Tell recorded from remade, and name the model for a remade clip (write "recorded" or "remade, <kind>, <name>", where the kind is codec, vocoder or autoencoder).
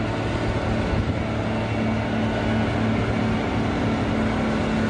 recorded